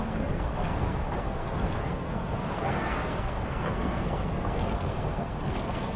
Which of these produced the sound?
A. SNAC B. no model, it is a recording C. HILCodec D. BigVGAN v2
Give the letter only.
A